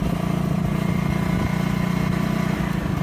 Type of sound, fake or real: real